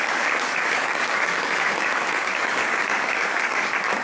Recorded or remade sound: remade